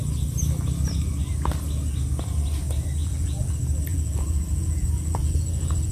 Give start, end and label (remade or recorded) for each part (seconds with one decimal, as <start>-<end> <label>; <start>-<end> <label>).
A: 0.0-3.0 recorded; 3.0-3.5 remade; 3.5-3.9 recorded; 3.9-5.9 remade